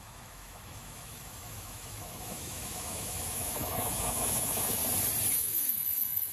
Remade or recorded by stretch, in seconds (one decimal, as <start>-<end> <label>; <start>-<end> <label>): 0.0-4.8 remade; 4.8-5.3 recorded; 5.3-6.3 remade